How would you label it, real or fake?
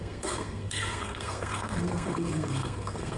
fake